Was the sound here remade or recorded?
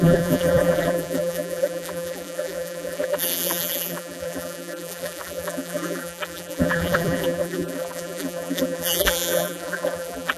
remade